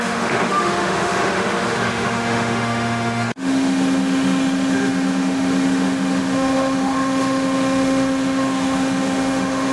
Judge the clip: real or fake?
fake